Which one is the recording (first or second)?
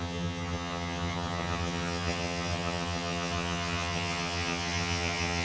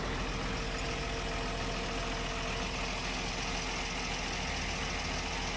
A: second